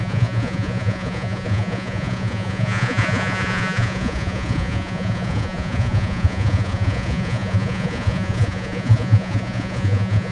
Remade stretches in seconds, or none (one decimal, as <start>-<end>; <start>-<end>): 0.0-10.3